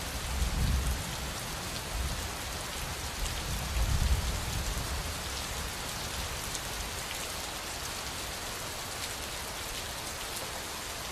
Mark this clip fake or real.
real